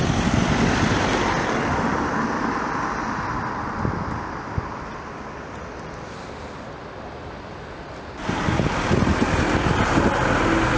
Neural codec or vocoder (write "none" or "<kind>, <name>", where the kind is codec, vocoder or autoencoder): none